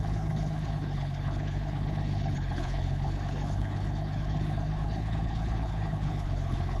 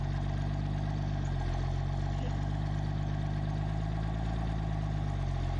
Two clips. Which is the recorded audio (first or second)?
second